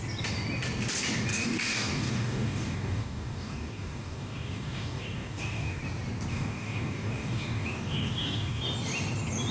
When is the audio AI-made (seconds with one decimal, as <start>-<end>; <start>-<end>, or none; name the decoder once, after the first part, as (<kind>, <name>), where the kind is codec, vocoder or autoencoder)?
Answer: 1.3-5.8 (codec, DAC); 6.3-8.6